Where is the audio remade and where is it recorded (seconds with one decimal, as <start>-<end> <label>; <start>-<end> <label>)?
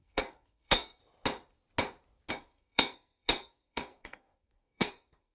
0.0-1.0 remade; 1.0-2.3 recorded; 2.3-5.3 remade